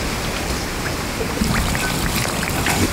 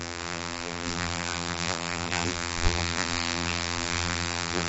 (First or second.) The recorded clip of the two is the first